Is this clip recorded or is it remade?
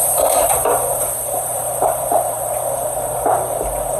remade